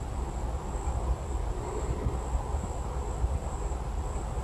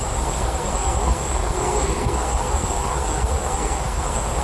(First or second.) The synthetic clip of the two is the second